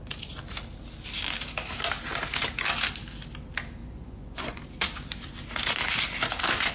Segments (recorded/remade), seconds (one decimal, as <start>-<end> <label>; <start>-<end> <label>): 0.0-3.8 recorded; 3.8-4.6 remade; 4.6-6.7 recorded